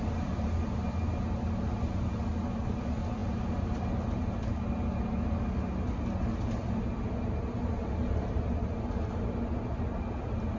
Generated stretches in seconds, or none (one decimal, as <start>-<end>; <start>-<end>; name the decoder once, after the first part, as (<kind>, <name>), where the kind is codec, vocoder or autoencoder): none